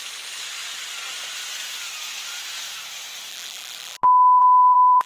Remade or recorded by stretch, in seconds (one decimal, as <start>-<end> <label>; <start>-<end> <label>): 0.0-3.3 recorded; 3.3-4.0 remade; 4.0-4.4 recorded; 4.4-5.1 remade